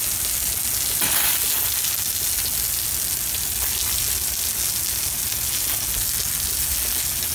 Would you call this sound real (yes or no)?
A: yes